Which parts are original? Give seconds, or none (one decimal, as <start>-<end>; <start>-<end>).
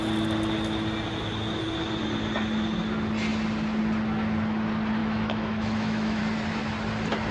0.0-5.0; 6.2-7.3